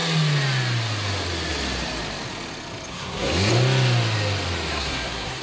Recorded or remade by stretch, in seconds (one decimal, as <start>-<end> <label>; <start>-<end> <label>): 0.0-2.9 recorded; 2.9-3.5 remade; 3.5-4.7 recorded; 4.7-5.4 remade